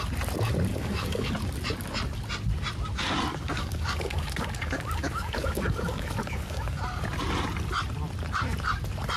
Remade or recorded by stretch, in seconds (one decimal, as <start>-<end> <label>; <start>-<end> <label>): 0.0-0.7 recorded; 0.7-1.3 remade; 1.3-3.3 recorded; 3.3-6.8 remade; 6.8-9.2 recorded